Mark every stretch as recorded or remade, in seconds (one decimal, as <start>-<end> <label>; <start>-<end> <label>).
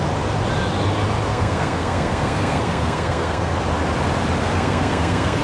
0.0-1.3 recorded; 1.3-3.6 remade; 3.6-4.4 recorded; 4.4-5.4 remade